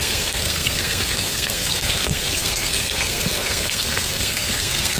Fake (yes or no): yes